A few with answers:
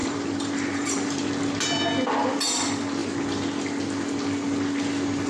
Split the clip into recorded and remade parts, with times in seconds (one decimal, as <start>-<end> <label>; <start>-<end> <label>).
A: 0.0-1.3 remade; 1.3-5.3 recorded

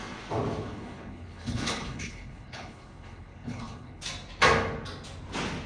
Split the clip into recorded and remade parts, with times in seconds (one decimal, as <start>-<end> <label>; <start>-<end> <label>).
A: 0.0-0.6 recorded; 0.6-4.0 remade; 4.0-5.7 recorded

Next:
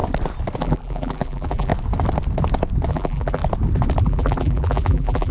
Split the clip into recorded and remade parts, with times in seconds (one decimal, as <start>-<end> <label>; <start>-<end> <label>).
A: 0.0-0.6 recorded; 0.6-1.7 remade; 1.7-2.9 recorded; 2.9-3.4 remade; 3.4-4.0 recorded; 4.0-5.3 remade